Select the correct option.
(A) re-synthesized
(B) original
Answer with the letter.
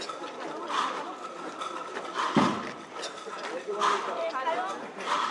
B